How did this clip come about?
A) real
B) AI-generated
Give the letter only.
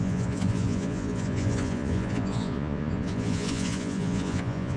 B